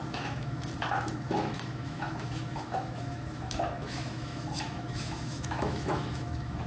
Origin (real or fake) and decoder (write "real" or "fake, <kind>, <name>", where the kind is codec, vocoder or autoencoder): fake, autoencoder, DAC-VAE